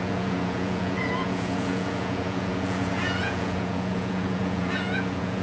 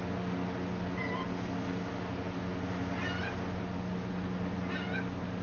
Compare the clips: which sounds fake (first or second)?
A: first